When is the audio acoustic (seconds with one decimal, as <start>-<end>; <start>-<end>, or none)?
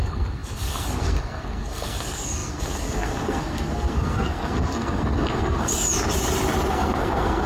5.7-6.7